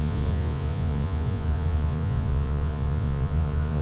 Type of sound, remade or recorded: remade